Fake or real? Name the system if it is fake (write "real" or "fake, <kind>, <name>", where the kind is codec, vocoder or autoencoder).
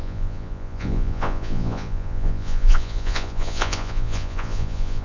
fake, vocoder, Vocos